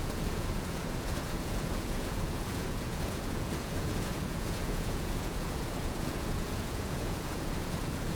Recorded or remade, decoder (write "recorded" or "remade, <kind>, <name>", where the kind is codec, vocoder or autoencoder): remade, vocoder, Vocos